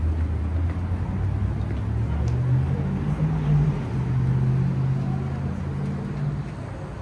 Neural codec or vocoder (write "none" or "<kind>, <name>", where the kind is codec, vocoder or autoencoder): none